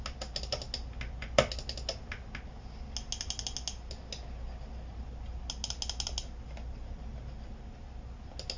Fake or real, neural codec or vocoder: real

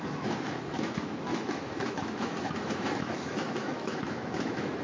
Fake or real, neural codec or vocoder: fake, autoencoder, DAC-VAE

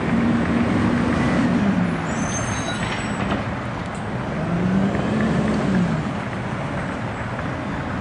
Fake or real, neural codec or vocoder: real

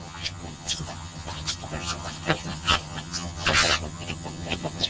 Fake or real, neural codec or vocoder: fake, vocoder, HiFi-GAN